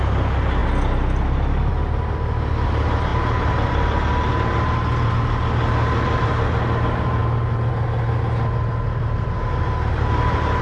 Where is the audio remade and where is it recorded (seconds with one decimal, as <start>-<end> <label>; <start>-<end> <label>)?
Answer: 0.0-10.6 recorded

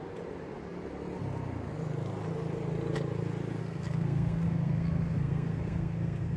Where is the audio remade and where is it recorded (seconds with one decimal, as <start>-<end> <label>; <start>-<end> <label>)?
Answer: 0.0-3.6 recorded; 3.6-6.4 remade

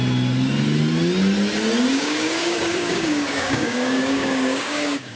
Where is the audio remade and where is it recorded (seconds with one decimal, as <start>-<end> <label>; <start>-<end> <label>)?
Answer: 0.0-1.9 recorded; 1.9-5.2 remade

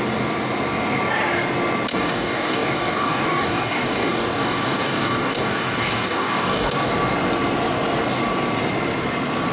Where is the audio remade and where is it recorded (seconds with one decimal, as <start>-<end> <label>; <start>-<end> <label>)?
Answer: 0.0-1.9 recorded; 1.9-6.9 remade; 6.9-9.5 recorded

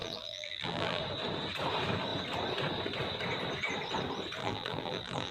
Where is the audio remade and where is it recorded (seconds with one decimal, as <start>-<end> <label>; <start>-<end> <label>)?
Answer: 0.0-1.0 remade; 1.0-4.4 recorded; 4.4-5.3 remade

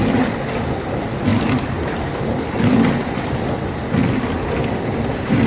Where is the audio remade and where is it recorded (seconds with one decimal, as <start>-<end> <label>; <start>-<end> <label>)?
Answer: 0.0-5.5 recorded

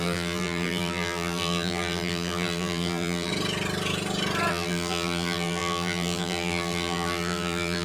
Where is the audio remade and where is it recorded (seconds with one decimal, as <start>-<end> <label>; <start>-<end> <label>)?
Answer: 0.0-3.3 remade; 3.3-4.5 recorded; 4.5-7.8 remade

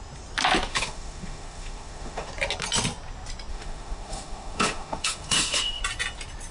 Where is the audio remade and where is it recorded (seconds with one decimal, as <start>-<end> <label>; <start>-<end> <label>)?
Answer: 0.0-0.7 recorded; 0.7-2.3 remade; 2.3-3.5 recorded; 3.5-5.8 remade; 5.8-6.5 recorded